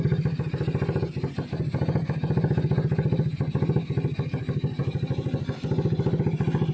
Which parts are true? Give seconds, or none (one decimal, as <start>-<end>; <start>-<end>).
0.0-6.7

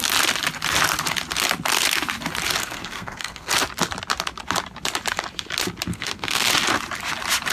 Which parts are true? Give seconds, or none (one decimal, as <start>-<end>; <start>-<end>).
0.0-2.6; 3.5-5.9; 6.5-7.5

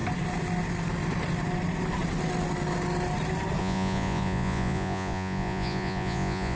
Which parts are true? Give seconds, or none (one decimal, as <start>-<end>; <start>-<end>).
0.0-3.6

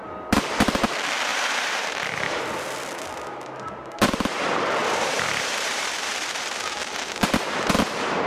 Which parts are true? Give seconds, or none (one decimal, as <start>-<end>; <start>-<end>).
0.0-1.3; 2.4-4.8; 7.1-8.3